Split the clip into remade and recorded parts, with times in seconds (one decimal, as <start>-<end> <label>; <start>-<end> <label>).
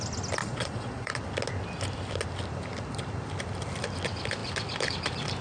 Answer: 0.0-0.4 recorded; 0.4-1.1 remade; 1.1-5.4 recorded